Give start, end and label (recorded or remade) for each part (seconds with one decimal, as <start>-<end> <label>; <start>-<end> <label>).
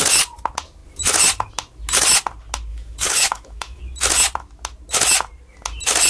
0.0-2.7 recorded; 2.7-3.8 remade; 3.8-6.1 recorded